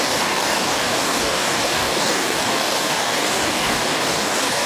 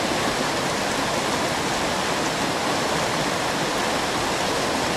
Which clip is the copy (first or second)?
first